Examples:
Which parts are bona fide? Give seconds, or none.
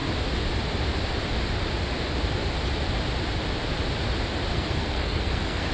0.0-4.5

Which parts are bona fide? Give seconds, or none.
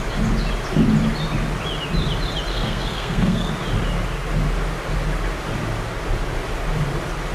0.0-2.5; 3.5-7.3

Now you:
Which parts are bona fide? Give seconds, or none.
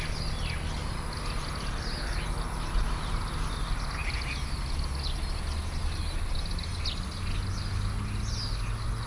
0.0-9.1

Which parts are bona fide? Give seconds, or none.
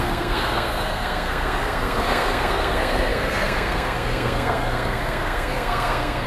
none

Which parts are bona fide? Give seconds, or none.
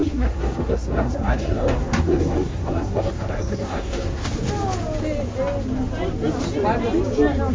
4.2-7.5